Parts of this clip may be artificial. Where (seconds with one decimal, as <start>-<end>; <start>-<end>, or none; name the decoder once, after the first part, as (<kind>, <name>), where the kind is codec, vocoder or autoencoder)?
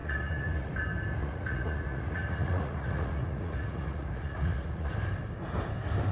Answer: 0.0-0.7 (vocoder, Vocos); 1.2-4.9